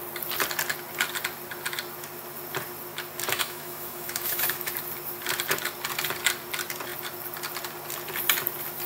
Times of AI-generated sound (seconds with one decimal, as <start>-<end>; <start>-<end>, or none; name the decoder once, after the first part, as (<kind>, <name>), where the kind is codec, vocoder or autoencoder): 3.3-4.7 (autoencoder, DAC-VAE)